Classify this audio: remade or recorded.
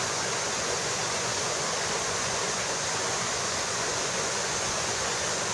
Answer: remade